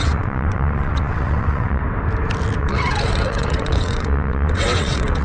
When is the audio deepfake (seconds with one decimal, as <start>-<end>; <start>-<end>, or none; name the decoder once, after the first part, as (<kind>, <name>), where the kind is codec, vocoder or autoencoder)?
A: 0.0-1.8 (vocoder, WaveNeXt); 2.6-5.2